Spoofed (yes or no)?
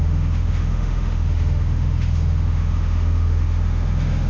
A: yes